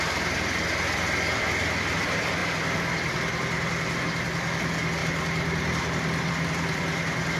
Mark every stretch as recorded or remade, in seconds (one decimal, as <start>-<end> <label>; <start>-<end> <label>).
0.0-5.0 remade; 5.0-6.3 recorded; 6.3-7.4 remade